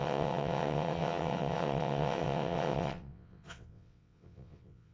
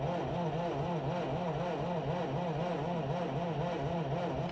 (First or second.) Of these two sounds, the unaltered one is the second